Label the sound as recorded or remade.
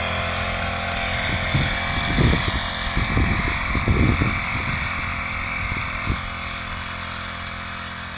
recorded